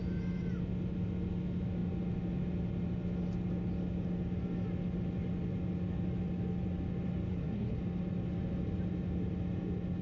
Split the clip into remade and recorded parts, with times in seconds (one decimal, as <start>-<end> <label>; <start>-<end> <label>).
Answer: 0.0-7.3 recorded; 7.3-7.8 remade; 7.8-10.0 recorded